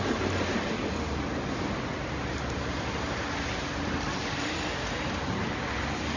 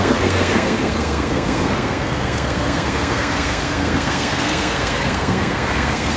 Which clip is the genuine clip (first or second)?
first